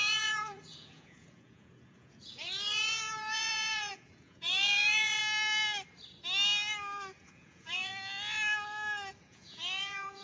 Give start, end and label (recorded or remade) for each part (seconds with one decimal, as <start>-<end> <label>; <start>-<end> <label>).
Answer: 0.0-5.2 remade; 5.2-7.2 recorded; 7.2-7.9 remade; 7.9-9.2 recorded; 9.2-10.2 remade